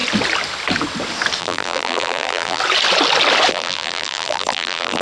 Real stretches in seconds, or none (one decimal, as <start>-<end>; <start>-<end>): 0.0-1.4; 2.6-3.5